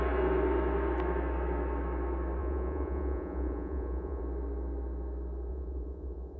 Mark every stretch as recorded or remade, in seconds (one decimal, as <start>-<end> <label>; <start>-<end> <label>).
0.0-2.4 recorded; 2.4-4.2 remade; 4.2-5.5 recorded; 5.5-6.4 remade